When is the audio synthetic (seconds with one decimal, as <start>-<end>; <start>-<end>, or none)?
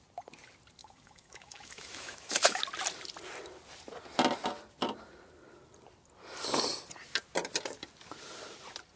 0.8-2.6